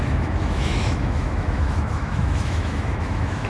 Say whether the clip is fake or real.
fake